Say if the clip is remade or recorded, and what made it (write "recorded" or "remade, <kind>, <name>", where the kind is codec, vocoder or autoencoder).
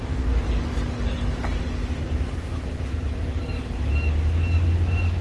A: recorded